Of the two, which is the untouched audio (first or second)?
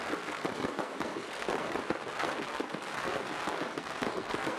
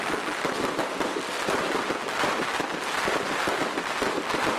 second